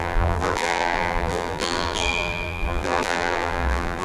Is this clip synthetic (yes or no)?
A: yes